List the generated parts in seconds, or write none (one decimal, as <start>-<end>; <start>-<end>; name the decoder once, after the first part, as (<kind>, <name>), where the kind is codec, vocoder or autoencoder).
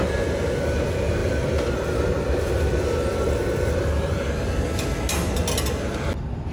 1.2-4.3 (vocoder, BigVGAN v2)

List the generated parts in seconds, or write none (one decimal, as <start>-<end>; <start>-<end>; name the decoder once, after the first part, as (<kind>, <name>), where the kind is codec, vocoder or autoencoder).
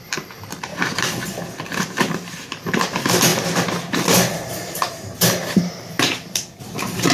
0.0-0.7 (vocoder, BigVGAN v2); 2.0-7.1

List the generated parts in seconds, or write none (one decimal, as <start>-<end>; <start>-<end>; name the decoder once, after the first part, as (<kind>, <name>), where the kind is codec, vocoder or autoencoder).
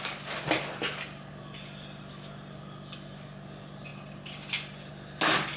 none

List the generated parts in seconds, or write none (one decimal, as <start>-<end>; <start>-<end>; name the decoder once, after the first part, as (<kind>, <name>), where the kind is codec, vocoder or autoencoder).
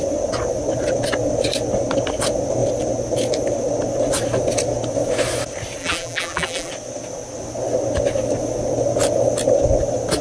5.8-6.7 (vocoder, BigVGAN v2)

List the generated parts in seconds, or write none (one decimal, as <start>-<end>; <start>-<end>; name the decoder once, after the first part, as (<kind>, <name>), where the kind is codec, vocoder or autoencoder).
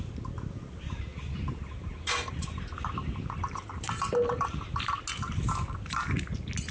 1.1-3.7 (vocoder, BigVGAN v2); 4.3-4.9